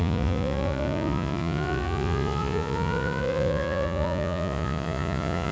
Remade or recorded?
remade